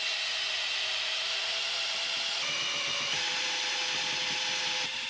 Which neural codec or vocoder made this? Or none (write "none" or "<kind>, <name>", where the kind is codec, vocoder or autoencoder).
none